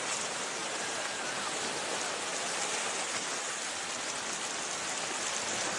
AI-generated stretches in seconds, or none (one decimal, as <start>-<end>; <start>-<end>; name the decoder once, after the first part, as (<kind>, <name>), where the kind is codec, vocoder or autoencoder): none